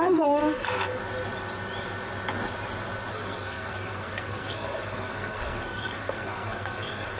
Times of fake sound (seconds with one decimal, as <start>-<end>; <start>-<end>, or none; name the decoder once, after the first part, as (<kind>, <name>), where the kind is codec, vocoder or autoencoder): 0.0-1.0 (codec, SNAC); 3.1-7.2